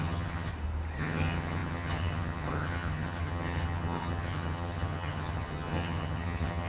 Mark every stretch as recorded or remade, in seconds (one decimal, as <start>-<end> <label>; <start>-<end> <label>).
0.0-0.5 remade; 0.5-1.0 recorded; 1.0-6.7 remade

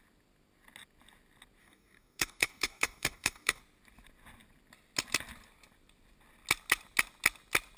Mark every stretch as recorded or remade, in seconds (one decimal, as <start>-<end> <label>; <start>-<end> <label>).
0.0-1.6 recorded; 1.6-3.6 remade; 3.6-7.8 recorded

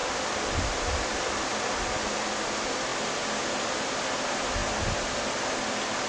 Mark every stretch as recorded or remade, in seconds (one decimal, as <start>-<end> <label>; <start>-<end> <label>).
0.0-2.3 remade; 2.3-6.1 recorded

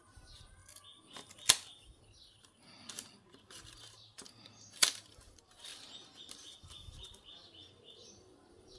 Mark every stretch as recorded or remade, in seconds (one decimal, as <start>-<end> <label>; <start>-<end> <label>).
0.0-0.6 remade; 0.6-3.7 recorded; 3.7-5.7 remade; 5.7-8.0 recorded; 8.0-8.8 remade

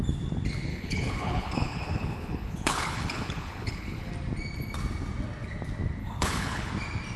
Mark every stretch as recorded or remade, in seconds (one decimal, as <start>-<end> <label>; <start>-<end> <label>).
0.0-0.7 recorded; 0.7-4.1 remade; 4.1-6.0 recorded; 6.0-6.7 remade; 6.7-7.2 recorded

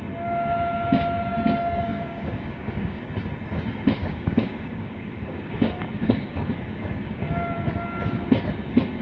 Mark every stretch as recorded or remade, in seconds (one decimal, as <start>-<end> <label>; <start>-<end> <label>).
0.0-1.3 recorded; 1.3-3.1 remade; 3.1-4.0 recorded; 4.0-7.5 remade; 7.5-9.0 recorded